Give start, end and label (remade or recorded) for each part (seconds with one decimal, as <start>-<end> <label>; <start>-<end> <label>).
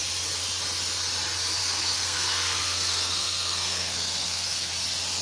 0.0-1.6 recorded; 1.6-4.7 remade; 4.7-5.2 recorded